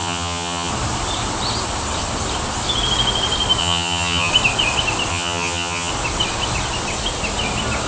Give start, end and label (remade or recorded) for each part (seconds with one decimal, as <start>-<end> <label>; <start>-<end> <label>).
0.0-0.7 remade; 0.7-3.6 recorded; 3.6-4.3 remade; 4.3-5.1 recorded; 5.1-5.9 remade; 5.9-7.9 recorded